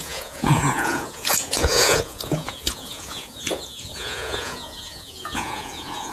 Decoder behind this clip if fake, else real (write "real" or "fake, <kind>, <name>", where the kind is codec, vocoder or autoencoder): fake, vocoder, Vocos